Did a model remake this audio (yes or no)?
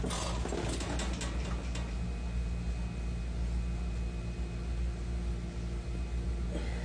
no